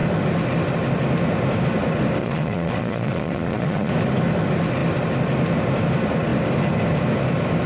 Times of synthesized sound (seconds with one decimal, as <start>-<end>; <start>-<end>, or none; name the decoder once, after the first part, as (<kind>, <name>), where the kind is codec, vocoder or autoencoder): 2.2-3.9 (vocoder, Vocos)